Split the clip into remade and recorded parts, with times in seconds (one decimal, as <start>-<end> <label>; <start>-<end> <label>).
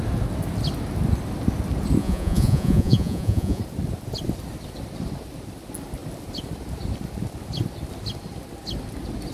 0.0-2.0 recorded; 2.0-3.6 remade; 3.6-9.3 recorded